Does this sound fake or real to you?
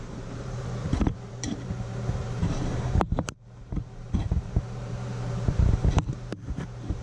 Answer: fake